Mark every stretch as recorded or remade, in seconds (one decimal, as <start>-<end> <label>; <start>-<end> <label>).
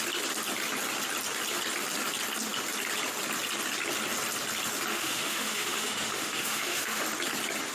0.0-4.9 recorded; 4.9-7.0 remade; 7.0-7.7 recorded